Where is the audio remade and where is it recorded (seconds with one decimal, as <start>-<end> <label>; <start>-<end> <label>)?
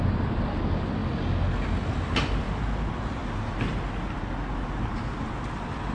0.0-5.9 recorded